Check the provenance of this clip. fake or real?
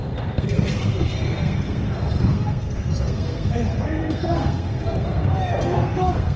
fake